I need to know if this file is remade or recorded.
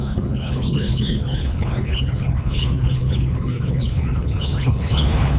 remade